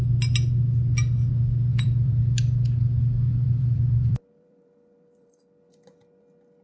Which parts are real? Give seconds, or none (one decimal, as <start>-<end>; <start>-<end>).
0.0-1.7; 2.2-3.3; 5.4-6.6